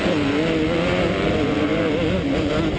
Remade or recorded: recorded